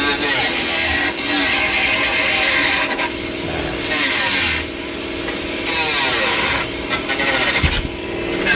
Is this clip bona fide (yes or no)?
yes